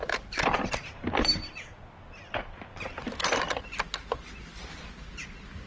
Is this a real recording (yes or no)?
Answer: yes